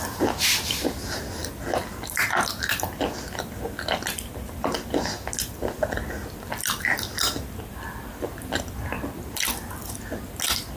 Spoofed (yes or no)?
no